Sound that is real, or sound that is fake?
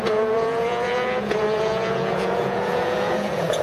fake